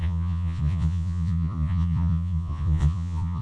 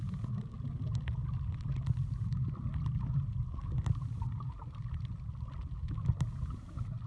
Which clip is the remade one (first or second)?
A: first